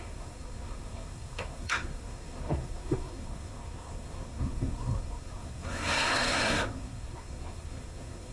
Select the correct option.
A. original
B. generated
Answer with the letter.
B